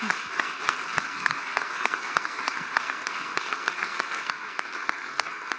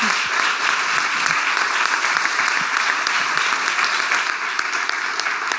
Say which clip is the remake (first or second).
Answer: first